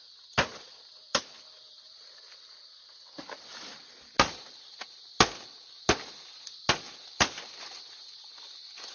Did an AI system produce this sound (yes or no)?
no